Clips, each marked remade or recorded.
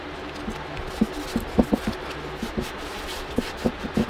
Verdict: recorded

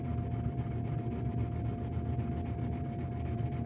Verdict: recorded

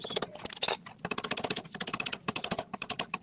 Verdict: recorded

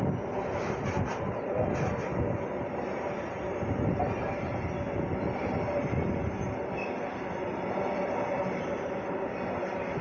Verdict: recorded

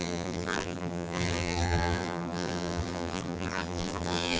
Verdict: remade